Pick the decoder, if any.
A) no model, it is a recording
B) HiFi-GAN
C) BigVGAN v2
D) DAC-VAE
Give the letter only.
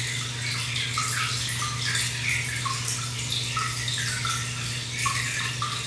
A